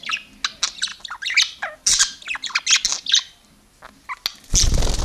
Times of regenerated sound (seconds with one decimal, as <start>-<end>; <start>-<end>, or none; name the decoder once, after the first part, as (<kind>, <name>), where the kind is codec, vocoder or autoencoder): none